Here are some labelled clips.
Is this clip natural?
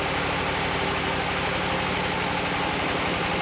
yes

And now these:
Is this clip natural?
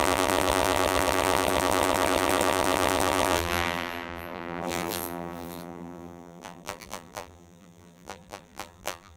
no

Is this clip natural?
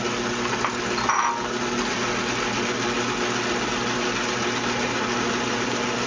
yes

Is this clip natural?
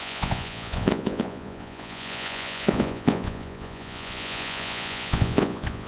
no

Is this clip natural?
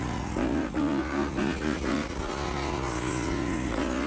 no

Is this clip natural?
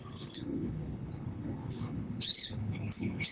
no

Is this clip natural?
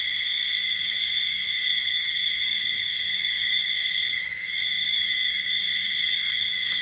no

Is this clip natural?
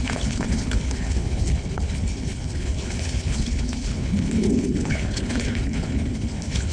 no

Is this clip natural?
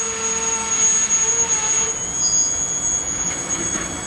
yes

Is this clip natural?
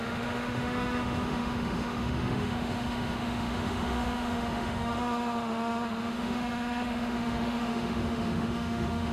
no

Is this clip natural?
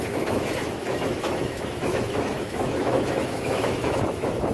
no